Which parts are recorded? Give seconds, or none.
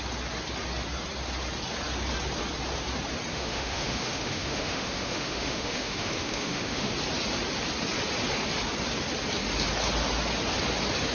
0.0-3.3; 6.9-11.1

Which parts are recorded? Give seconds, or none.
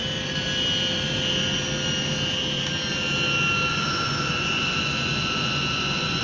0.0-3.7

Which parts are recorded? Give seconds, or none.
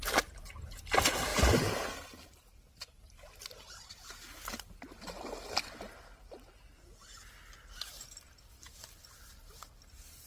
0.0-10.3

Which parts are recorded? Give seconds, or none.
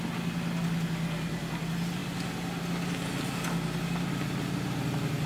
0.0-5.3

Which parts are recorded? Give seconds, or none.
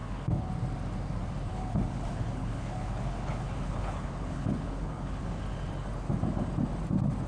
0.5-1.5; 5.2-7.3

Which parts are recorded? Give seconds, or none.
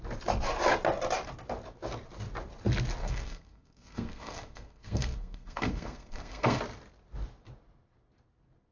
0.0-3.0; 6.6-8.7